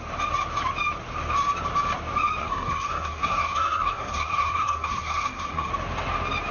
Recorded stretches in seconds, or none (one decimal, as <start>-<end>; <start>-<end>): 0.0-2.4; 5.7-6.5